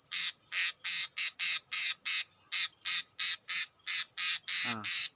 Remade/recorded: recorded